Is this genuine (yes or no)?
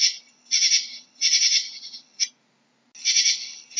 yes